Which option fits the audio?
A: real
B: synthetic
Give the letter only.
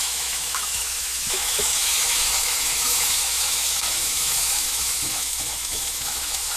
B